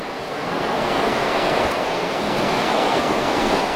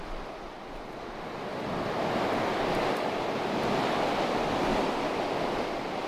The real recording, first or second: second